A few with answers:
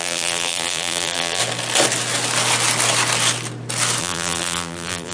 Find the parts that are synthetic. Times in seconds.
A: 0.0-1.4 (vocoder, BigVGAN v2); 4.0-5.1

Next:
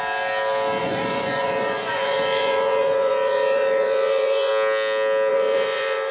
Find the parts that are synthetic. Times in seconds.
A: 0.8-4.5 (vocoder, Vocos); 5.3-6.1

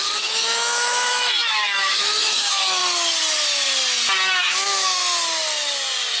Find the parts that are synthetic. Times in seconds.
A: 0.0-2.8 (autoencoder, DAC-VAE); 4.4-5.0